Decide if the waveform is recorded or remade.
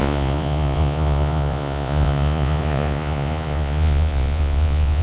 remade